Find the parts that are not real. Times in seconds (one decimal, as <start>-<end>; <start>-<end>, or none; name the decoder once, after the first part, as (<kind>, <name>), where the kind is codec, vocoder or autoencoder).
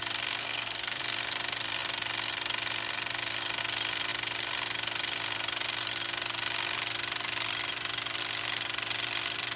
0.4-1.0 (codec, SNAC)